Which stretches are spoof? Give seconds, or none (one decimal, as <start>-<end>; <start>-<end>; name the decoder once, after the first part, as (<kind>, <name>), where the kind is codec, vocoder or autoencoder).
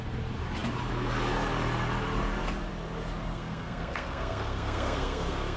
3.3-5.6 (codec, SNAC)